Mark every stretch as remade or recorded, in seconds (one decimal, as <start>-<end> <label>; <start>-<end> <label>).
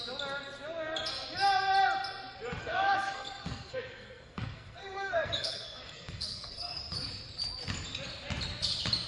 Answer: 0.0-2.6 recorded; 2.6-6.8 remade; 6.8-9.1 recorded